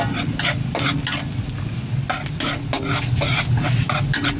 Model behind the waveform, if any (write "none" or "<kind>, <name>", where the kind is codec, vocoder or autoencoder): none